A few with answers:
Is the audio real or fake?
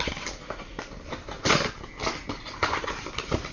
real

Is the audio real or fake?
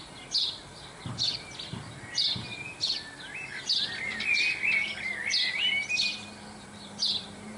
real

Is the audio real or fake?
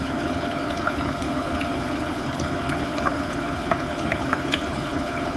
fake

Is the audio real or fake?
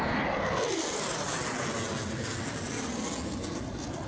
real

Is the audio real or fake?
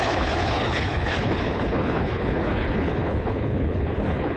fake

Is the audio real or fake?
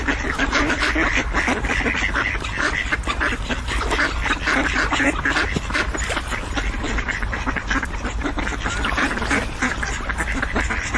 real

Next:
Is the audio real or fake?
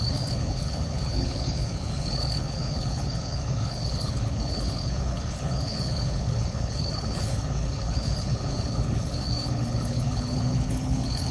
fake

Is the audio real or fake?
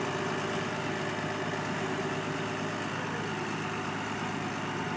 real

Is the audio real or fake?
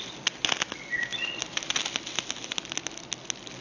real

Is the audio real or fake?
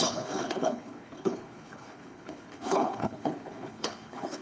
fake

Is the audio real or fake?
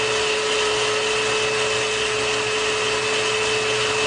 real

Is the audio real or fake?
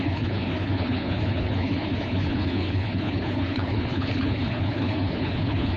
fake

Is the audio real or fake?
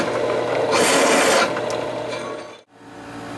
real